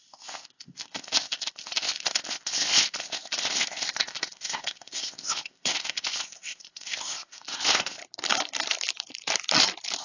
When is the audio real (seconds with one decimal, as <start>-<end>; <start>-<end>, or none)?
8.0-10.0